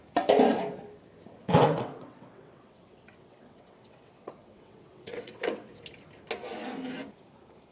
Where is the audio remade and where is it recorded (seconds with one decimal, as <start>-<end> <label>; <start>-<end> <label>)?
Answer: 0.0-1.4 recorded; 1.4-5.8 remade; 5.8-7.7 recorded

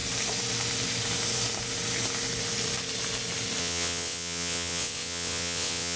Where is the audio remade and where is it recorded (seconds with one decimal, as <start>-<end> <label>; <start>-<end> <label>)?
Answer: 0.0-3.6 recorded; 3.6-6.0 remade

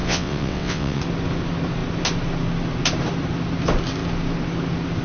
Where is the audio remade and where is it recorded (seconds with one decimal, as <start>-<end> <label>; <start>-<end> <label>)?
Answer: 0.0-1.0 remade; 1.0-5.0 recorded

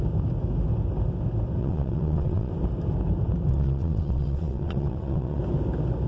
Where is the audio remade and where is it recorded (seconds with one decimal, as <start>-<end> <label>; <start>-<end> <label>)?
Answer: 0.0-1.6 recorded; 1.6-2.5 remade; 2.5-3.5 recorded; 3.5-5.4 remade; 5.4-6.1 recorded